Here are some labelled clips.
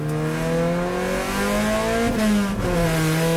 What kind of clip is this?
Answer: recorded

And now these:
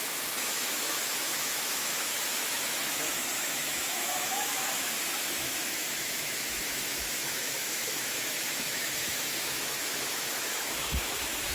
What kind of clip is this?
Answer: remade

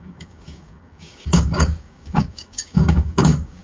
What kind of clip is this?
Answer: remade